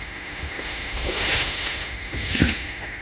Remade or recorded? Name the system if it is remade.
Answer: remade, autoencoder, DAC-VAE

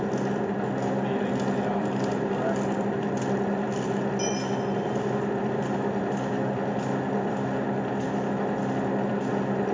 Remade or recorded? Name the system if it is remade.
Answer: recorded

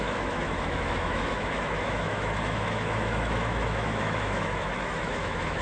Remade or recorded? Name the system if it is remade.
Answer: remade, autoencoder, DAC-VAE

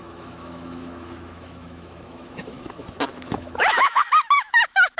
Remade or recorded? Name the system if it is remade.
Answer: remade, autoencoder, DAC-VAE